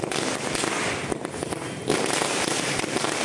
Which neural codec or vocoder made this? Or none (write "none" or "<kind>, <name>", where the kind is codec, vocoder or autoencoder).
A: none